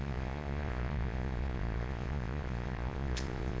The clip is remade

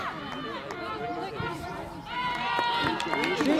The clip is recorded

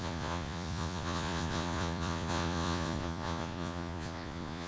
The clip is remade